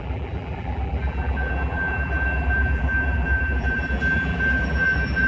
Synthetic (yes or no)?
yes